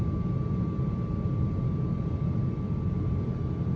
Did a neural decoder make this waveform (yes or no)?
no